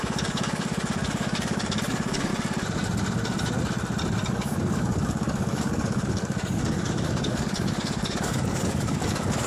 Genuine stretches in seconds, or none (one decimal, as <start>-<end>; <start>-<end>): 2.3-4.3